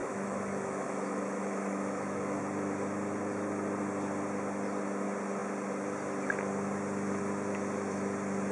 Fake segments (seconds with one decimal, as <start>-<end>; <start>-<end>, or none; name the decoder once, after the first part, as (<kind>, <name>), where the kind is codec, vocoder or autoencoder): 0.0-2.4 (autoencoder, DAC-VAE)